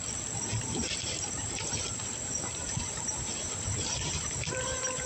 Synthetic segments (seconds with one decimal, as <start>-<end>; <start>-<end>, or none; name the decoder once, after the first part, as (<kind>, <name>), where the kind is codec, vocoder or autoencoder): 0.6-5.1 (vocoder, BigVGAN v2)